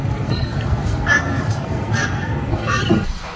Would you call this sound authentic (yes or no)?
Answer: no